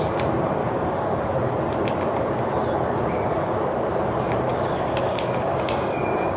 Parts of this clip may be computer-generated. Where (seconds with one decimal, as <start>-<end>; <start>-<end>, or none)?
0.6-1.2; 4.5-6.4